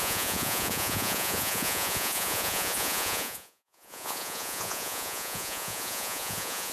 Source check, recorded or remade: remade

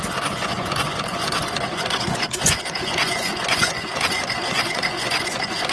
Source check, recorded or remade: remade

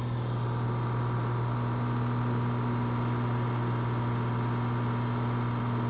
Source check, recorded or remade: recorded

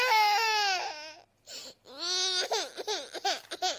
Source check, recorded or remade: recorded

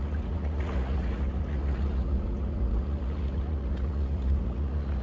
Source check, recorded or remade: remade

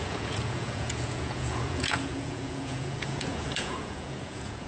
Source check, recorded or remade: remade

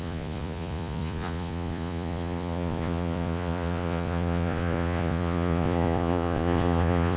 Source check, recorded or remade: remade